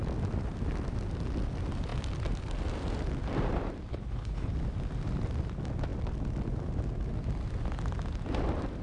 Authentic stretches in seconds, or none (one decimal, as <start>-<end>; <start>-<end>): 0.0-3.9; 4.5-8.8